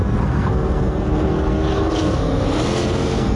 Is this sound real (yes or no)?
no